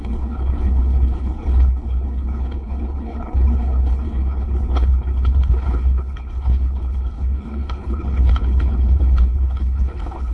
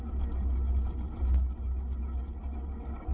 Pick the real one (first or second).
second